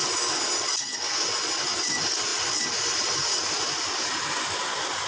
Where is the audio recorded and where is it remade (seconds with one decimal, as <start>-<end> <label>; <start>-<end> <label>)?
0.0-5.1 recorded